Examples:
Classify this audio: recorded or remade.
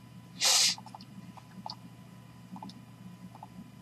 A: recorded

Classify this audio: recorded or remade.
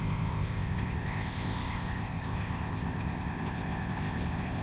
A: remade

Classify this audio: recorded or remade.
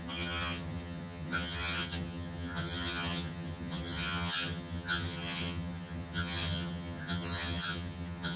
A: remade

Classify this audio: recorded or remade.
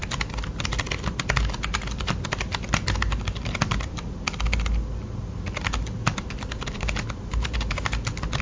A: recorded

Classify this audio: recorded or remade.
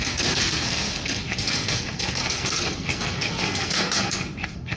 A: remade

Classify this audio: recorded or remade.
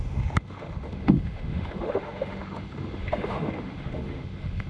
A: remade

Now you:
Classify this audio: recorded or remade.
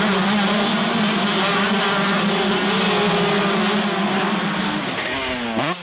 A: recorded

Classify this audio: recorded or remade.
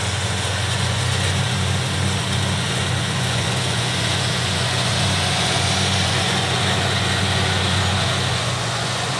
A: remade